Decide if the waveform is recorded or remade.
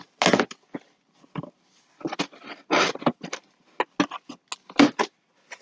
recorded